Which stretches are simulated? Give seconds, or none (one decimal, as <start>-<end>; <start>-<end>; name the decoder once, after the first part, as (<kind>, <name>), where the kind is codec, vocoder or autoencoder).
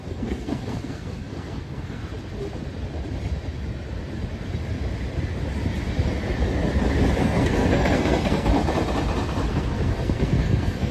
0.0-2.0 (codec, SNAC); 7.2-8.5; 9.5-10.9